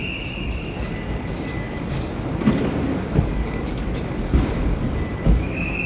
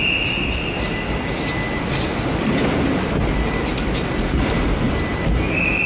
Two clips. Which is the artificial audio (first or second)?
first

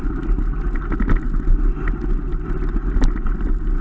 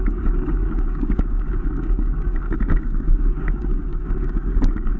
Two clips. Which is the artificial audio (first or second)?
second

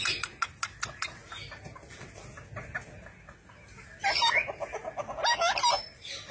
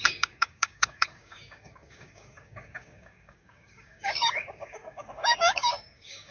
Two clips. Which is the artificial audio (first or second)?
second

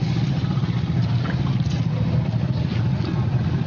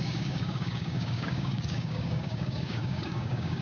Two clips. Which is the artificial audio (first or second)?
second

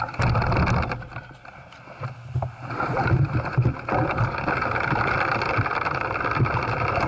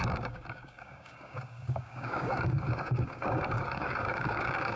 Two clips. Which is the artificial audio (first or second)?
second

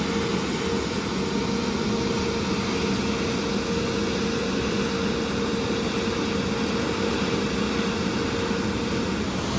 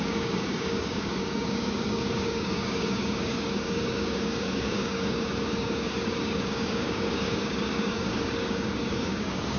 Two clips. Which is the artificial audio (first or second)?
second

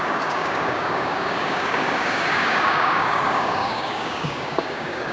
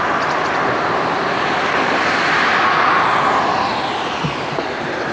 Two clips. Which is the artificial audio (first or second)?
first